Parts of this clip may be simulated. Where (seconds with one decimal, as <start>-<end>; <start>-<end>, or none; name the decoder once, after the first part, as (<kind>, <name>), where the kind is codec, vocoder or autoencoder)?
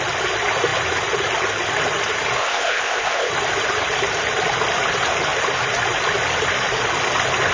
2.4-3.3 (codec, ZipCodec)